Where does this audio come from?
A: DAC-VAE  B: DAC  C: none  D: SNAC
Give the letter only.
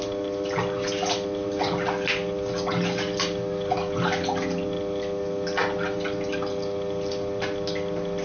C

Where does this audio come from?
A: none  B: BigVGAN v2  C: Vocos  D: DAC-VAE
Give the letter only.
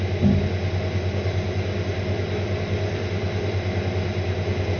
A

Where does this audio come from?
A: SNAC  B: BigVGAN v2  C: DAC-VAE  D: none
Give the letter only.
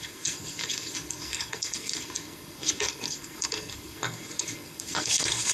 A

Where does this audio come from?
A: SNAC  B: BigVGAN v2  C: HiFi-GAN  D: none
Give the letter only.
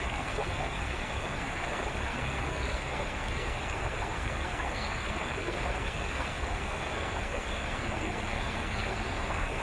A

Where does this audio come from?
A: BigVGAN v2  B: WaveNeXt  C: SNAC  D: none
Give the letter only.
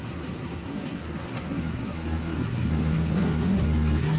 C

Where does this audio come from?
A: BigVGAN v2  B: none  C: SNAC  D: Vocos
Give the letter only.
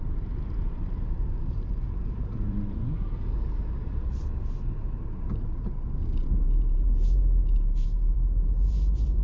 A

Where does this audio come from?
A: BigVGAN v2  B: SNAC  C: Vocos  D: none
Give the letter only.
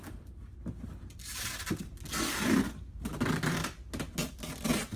D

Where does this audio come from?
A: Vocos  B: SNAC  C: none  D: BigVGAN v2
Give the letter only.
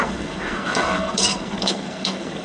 B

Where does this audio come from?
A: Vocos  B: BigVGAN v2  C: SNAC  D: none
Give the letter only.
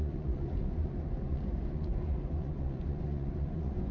A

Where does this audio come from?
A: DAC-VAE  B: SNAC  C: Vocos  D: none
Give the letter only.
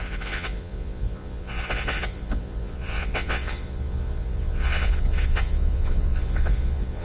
C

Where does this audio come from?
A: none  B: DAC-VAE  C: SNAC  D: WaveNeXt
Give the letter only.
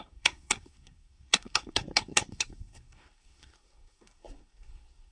C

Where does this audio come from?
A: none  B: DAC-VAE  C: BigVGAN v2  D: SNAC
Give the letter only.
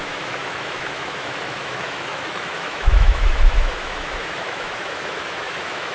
B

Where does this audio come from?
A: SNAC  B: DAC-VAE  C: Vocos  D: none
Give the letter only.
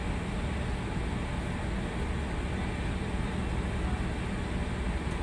D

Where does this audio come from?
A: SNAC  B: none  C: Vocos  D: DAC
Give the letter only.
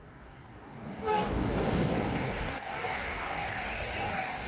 D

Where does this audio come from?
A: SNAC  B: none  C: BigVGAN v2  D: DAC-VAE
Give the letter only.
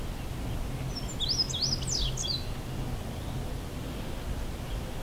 B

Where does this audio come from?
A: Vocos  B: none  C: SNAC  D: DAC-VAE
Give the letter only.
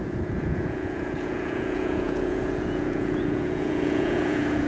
A